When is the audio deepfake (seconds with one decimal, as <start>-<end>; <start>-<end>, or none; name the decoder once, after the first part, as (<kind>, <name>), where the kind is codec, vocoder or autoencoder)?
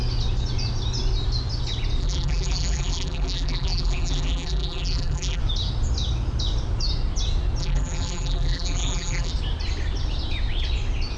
2.0-5.4 (vocoder, BigVGAN v2); 7.6-9.3